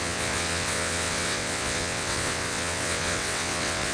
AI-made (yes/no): yes